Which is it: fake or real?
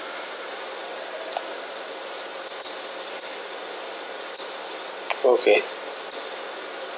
real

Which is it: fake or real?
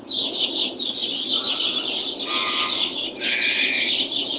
real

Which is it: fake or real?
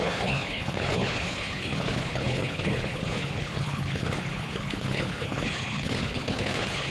fake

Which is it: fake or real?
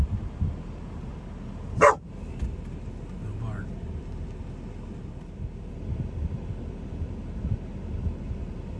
real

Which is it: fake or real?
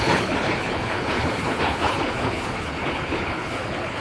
fake